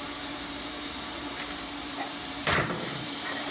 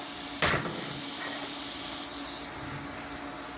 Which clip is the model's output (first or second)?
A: first